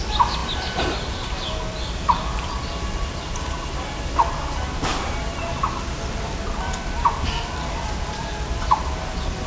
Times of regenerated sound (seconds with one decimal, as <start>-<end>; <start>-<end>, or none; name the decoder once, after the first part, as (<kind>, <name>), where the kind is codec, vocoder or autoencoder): 0.0-9.5 (vocoder, BigVGAN v2)